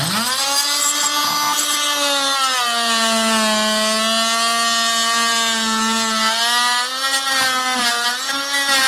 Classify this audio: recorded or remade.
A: recorded